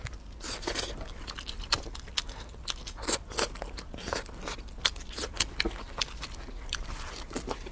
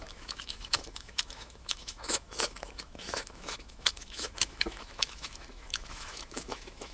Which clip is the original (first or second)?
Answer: first